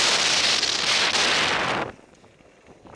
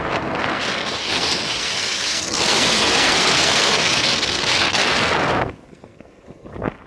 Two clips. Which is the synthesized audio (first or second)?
second